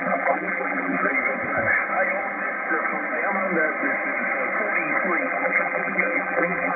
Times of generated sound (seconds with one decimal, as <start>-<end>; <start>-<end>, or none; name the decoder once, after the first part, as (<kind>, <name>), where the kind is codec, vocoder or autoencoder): 0.0-1.1 (vocoder, BigVGAN v2); 5.2-6.8